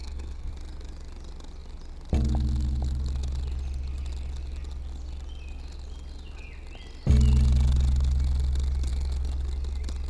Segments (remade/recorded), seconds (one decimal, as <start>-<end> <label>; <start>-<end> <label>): 0.0-0.5 remade; 0.5-10.1 recorded